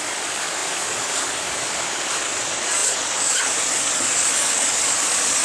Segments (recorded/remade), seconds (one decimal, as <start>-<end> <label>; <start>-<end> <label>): 0.0-5.4 remade